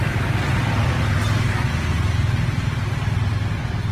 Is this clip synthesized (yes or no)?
no